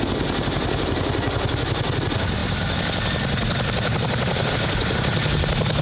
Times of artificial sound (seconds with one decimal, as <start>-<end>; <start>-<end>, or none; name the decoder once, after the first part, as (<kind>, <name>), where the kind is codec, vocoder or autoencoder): none